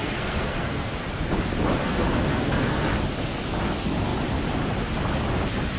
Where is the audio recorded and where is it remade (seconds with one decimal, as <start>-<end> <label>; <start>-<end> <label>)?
0.0-0.9 remade; 0.9-1.8 recorded; 1.8-2.9 remade; 2.9-5.8 recorded